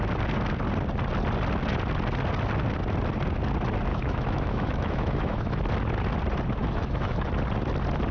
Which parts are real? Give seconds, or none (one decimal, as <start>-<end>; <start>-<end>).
0.0-3.9; 5.6-6.6; 7.3-8.1